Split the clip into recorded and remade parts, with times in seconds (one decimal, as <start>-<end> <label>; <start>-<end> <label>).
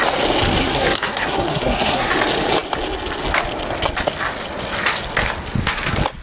0.0-0.6 recorded; 0.6-2.1 remade; 2.1-6.2 recorded